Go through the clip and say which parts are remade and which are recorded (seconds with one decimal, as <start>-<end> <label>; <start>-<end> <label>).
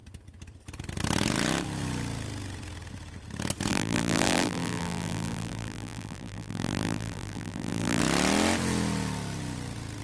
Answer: 0.0-3.7 recorded; 3.7-8.0 remade; 8.0-10.0 recorded